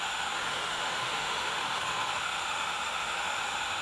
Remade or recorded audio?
remade